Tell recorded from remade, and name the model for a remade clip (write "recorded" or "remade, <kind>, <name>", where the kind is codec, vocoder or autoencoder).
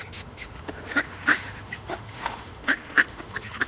remade, autoencoder, DAC-VAE